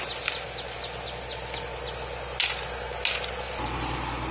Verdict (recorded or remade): recorded